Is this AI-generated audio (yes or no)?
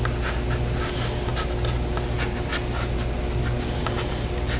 no